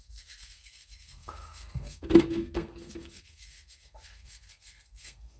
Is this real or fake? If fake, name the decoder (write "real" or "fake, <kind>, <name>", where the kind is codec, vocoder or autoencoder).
fake, codec, SNAC